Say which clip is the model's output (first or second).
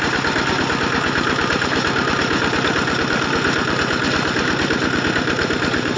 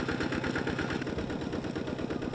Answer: first